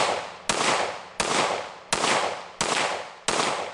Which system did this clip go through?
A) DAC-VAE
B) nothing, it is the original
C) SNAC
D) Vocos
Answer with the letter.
B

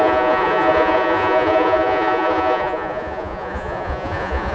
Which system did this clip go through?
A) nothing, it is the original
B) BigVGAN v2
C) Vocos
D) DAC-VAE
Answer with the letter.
C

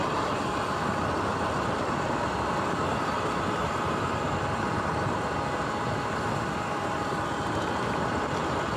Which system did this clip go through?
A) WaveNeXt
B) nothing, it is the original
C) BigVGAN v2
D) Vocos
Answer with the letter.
B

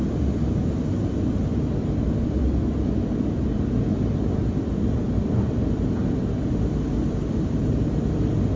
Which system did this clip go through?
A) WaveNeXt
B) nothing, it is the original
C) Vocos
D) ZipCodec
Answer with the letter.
B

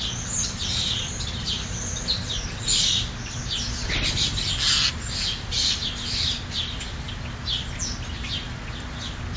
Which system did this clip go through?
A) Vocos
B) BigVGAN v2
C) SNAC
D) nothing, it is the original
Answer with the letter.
D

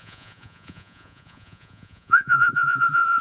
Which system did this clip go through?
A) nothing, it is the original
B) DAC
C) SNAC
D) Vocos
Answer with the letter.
D